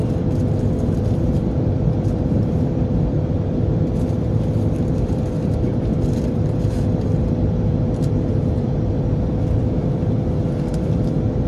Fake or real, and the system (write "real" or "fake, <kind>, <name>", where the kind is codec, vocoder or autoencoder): fake, vocoder, BigVGAN v2